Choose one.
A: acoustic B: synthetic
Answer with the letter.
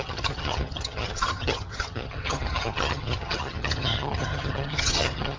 B